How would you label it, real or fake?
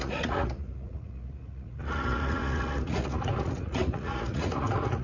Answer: fake